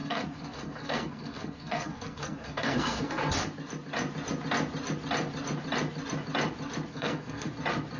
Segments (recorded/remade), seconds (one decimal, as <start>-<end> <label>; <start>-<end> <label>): 0.0-3.3 remade; 3.3-6.9 recorded; 6.9-7.5 remade; 7.5-8.0 recorded